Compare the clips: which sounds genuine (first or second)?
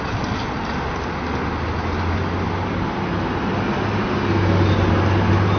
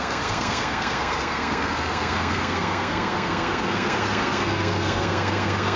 first